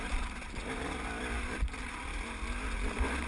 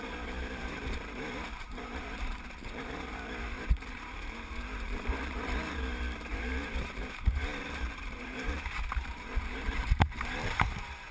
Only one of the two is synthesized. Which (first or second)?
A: second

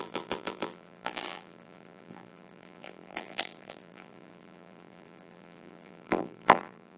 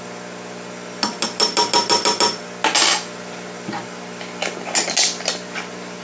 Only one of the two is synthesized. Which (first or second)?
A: first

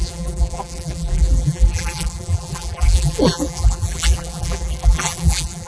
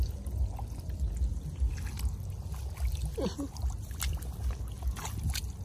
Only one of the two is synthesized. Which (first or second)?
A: first